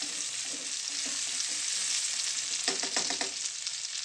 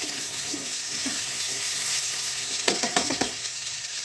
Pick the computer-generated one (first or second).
second